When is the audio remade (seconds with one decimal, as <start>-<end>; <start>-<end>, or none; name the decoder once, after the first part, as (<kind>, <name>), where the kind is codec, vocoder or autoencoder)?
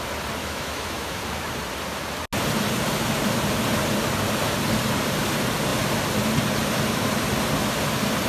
0.4-1.2 (autoencoder, DAC-VAE)